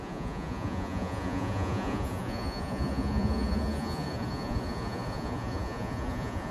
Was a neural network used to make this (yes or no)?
yes